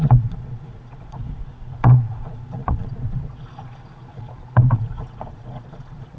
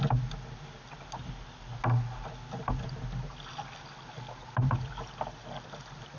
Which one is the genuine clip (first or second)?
second